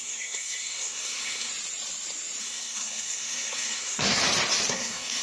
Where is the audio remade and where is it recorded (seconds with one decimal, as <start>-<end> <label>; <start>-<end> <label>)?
0.0-1.5 remade; 1.5-2.4 recorded; 2.4-4.2 remade; 4.2-4.7 recorded; 4.7-5.2 remade